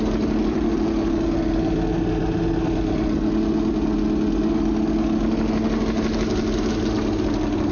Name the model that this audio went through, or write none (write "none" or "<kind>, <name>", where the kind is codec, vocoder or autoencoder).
none